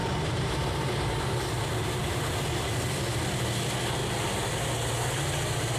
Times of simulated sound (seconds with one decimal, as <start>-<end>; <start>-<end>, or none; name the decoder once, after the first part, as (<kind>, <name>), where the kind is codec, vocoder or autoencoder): 0.0-2.9 (vocoder, BigVGAN v2)